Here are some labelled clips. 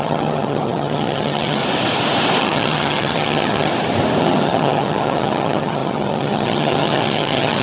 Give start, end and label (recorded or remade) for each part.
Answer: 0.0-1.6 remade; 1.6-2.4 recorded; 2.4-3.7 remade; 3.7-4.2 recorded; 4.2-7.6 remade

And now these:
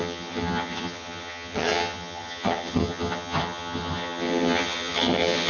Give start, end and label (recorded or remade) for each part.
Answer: 0.0-5.5 remade

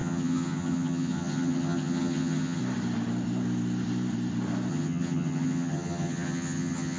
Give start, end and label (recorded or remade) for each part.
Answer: 0.0-2.6 remade; 2.6-4.7 recorded; 4.7-7.0 remade